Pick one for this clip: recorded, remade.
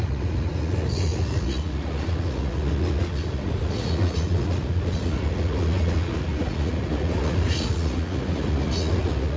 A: remade